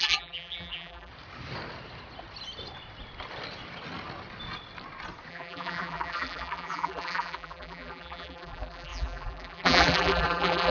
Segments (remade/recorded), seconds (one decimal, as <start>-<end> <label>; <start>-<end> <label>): 0.0-1.1 remade; 1.1-5.3 recorded; 5.3-10.7 remade